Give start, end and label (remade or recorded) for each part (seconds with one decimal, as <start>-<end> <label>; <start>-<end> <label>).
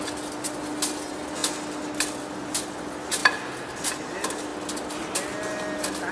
0.0-6.1 recorded